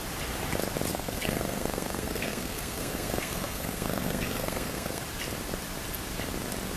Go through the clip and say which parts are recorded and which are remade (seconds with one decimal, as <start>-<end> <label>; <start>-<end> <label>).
0.0-0.9 recorded; 0.9-5.0 remade; 5.0-6.8 recorded